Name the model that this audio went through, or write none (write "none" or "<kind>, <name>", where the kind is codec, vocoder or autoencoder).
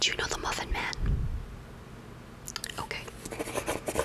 none